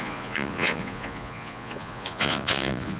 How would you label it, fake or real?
fake